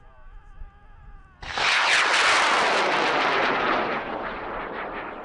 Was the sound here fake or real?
real